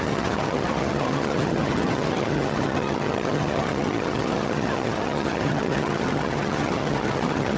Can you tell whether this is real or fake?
fake